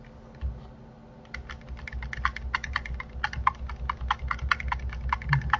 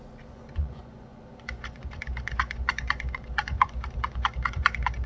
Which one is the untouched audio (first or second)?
first